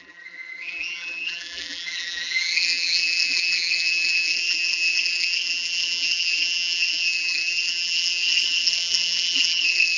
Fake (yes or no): yes